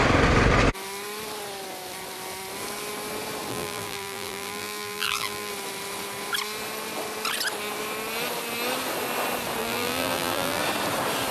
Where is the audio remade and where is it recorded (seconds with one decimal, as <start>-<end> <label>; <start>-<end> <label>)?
0.0-3.5 recorded; 3.5-5.5 remade; 5.5-9.6 recorded; 9.6-10.6 remade; 10.6-11.3 recorded